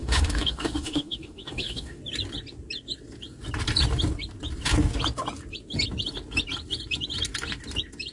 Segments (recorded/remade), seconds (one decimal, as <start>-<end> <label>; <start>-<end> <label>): 0.0-2.0 remade; 2.0-8.1 recorded